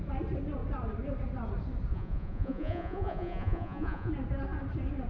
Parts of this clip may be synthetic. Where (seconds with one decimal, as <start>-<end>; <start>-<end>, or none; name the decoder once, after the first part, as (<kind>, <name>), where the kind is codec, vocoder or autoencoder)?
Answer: 1.9-4.1 (vocoder, Vocos)